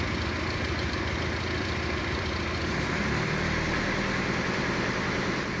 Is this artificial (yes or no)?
yes